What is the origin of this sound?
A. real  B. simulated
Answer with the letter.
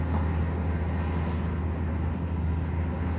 A